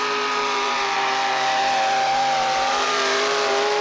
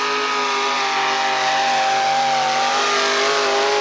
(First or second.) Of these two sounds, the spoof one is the first